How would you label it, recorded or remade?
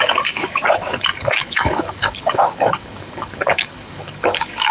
remade